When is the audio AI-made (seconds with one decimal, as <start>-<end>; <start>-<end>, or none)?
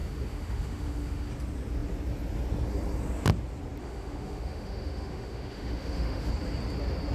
0.0-1.3; 3.8-6.3